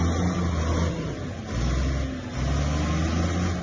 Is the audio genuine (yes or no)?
yes